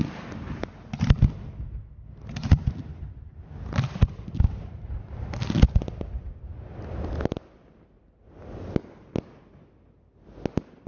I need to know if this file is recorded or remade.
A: recorded